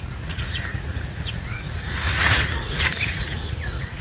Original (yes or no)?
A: no